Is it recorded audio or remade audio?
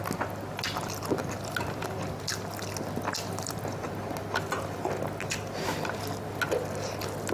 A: recorded